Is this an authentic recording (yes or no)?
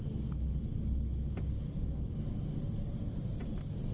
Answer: yes